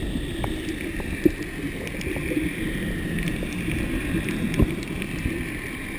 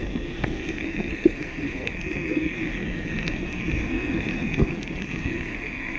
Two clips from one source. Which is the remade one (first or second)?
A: second